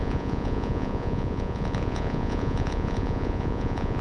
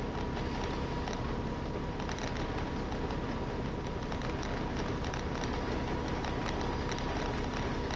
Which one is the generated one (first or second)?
first